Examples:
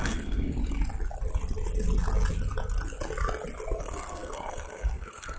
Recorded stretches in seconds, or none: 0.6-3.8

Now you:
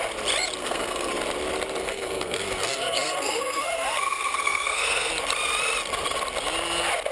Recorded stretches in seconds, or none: 0.0-0.6; 1.1-1.8; 5.1-7.1

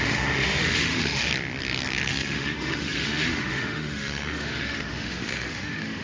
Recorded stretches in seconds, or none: 1.3-2.1

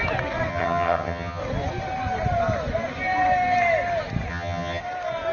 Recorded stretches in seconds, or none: 0.0-0.5; 1.4-4.3; 4.8-5.3

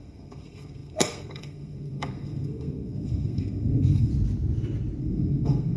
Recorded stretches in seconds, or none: 4.1-5.0

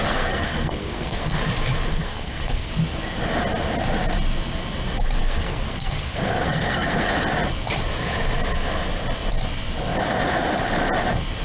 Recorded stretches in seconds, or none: 1.4-1.9; 2.7-5.2; 7.1-11.4

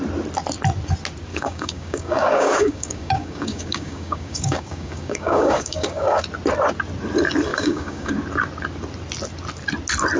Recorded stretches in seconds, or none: 0.0-1.3; 6.2-7.5; 8.2-10.2